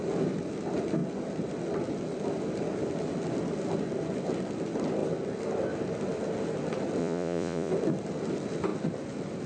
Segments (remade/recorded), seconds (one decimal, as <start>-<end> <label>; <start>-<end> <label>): 0.0-7.0 recorded; 7.0-7.7 remade; 7.7-9.5 recorded